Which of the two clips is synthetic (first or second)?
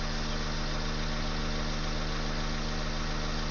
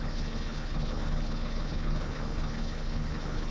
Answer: second